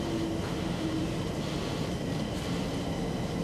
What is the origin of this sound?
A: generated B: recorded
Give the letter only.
B